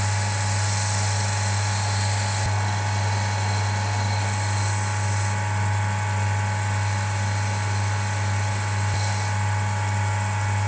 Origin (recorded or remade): recorded